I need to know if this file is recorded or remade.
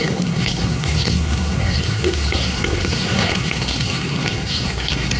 remade